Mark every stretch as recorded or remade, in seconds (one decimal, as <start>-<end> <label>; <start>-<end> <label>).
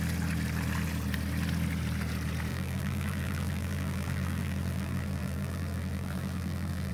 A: 0.0-2.5 recorded; 2.5-6.9 remade